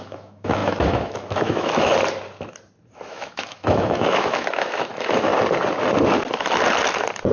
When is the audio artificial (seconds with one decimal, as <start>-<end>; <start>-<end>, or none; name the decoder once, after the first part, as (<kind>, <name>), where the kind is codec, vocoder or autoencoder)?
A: 0.0-1.9 (autoencoder, DAC-VAE); 3.1-5.3